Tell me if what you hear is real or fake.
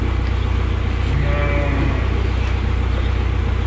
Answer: real